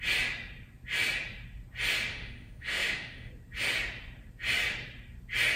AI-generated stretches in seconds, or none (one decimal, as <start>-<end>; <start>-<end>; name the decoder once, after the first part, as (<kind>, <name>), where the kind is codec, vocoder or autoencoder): 2.1-3.3 (autoencoder, DAC-VAE)